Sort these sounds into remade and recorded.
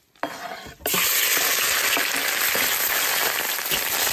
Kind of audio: recorded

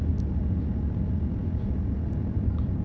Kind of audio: recorded